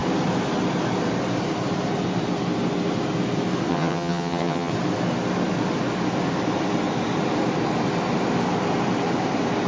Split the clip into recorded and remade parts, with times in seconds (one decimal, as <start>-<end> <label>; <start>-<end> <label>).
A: 0.0-3.7 recorded; 3.7-4.7 remade; 4.7-9.7 recorded